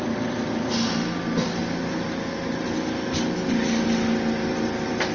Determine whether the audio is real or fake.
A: real